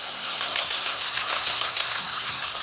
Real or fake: fake